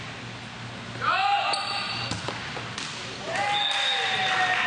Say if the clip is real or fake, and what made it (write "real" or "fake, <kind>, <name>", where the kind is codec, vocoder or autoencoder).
real